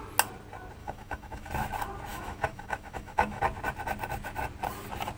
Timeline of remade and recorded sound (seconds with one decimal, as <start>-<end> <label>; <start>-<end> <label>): 0.0-0.8 recorded; 0.8-1.5 remade; 1.5-2.1 recorded; 2.1-3.4 remade; 3.4-5.2 recorded